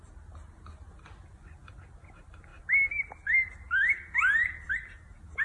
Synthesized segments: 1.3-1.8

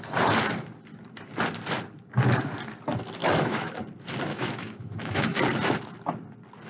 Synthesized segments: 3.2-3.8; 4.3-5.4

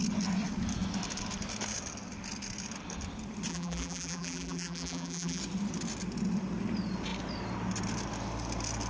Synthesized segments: 3.5-5.4